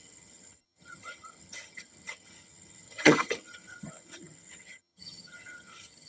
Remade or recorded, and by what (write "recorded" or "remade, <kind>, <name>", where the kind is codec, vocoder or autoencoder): remade, vocoder, HiFi-GAN